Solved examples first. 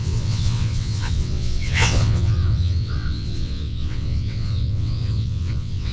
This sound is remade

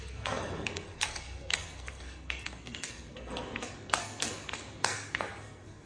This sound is remade